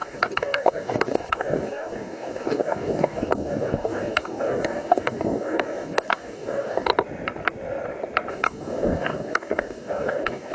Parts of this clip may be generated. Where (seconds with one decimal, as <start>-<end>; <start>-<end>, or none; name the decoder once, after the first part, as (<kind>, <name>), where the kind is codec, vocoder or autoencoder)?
0.0-6.9 (codec, DAC); 8.3-10.5